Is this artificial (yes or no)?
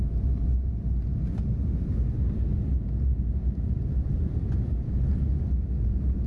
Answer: no